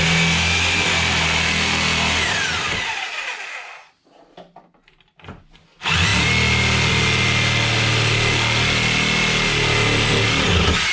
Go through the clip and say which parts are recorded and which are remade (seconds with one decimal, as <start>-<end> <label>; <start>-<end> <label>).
0.0-10.9 recorded